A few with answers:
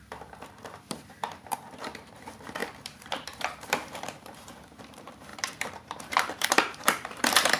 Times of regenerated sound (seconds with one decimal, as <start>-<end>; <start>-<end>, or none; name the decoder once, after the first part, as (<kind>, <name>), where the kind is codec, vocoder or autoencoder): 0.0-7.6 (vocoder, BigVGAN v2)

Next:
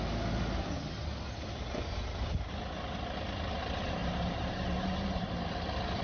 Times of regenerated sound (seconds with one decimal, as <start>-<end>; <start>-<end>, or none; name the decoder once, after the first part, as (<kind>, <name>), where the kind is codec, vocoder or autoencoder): 4.0-5.3 (vocoder, BigVGAN v2)

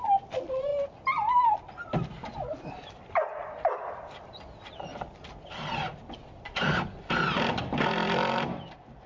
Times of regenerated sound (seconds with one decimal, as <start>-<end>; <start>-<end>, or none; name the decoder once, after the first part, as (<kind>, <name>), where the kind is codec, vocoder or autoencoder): 0.0-0.7 (vocoder, BigVGAN v2); 2.6-4.9; 5.5-9.1

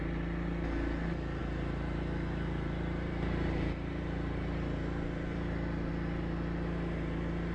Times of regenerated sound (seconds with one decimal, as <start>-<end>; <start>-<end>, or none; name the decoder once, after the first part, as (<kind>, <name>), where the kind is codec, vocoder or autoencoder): 1.4-5.9 (vocoder, BigVGAN v2)

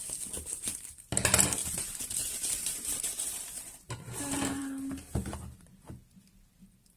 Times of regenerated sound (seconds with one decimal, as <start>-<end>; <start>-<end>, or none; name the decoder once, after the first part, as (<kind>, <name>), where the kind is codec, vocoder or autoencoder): 1.6-4.0 (vocoder, BigVGAN v2)

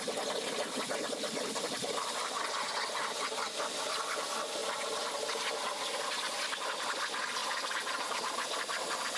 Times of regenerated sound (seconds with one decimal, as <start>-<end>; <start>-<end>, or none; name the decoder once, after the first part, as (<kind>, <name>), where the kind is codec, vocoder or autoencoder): 7.4-8.3 (vocoder, BigVGAN v2)

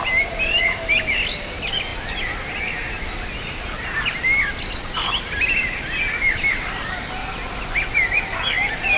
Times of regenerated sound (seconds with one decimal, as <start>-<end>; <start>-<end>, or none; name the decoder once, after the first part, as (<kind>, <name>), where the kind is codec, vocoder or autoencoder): none

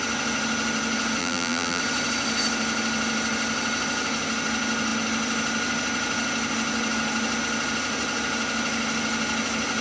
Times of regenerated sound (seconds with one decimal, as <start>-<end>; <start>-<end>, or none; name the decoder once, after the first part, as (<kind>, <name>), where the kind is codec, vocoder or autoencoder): 1.2-1.8 (vocoder, BigVGAN v2)